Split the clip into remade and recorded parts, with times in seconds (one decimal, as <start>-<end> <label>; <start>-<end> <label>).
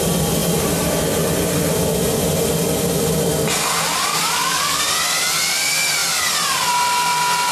0.0-4.1 recorded; 4.1-4.8 remade; 4.8-7.5 recorded